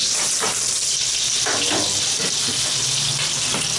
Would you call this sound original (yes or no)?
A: yes